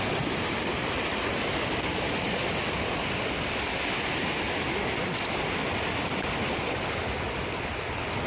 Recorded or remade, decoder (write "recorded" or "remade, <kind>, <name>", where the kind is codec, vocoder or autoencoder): recorded